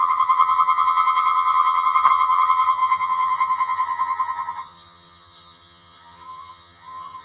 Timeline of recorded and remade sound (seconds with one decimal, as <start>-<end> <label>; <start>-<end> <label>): 0.0-7.2 remade